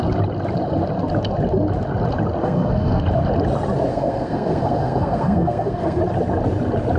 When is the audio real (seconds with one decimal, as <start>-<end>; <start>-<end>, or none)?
0.0-2.4; 3.0-3.9; 6.0-7.0